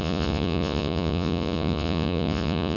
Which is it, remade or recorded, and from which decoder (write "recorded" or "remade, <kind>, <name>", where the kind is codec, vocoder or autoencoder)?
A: remade, vocoder, Vocos